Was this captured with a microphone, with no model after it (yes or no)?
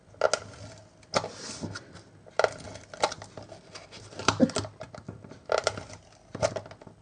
yes